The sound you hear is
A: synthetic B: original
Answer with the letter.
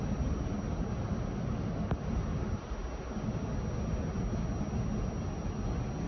B